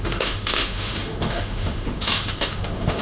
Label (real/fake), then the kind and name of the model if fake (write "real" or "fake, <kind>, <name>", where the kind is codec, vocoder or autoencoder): fake, autoencoder, DAC-VAE